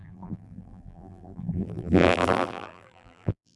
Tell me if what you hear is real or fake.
fake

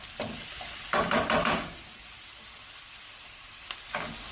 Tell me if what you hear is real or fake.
fake